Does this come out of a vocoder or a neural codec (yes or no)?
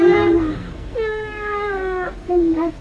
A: yes